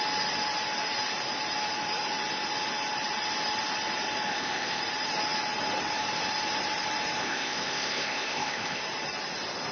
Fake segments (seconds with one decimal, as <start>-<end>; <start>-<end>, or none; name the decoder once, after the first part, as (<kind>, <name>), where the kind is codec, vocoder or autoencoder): 4.3-4.8 (codec, ZipCodec); 7.2-8.8